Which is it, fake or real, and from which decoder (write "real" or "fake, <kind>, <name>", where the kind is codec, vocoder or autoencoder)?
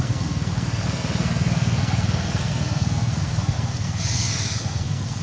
fake, codec, SNAC